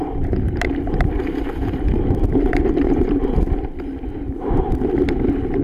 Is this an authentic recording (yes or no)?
no